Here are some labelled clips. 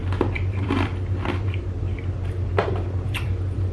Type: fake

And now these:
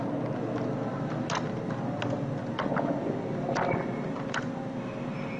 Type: real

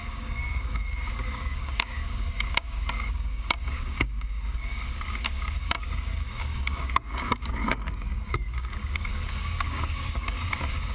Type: fake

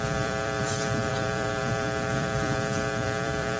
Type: fake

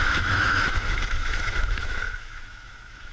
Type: fake